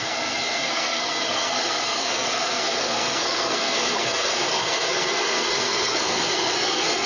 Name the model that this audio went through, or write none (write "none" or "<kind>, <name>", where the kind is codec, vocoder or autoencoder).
codec, SNAC